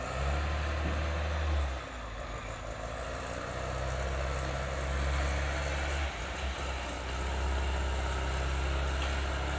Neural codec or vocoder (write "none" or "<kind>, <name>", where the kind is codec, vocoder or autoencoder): none